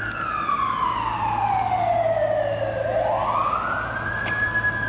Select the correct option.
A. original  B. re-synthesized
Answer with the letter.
A